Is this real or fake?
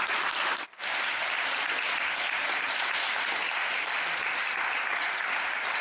real